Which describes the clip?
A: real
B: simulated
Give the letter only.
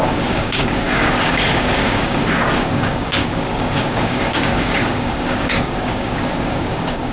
B